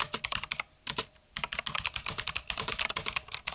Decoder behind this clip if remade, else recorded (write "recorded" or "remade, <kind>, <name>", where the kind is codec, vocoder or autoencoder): recorded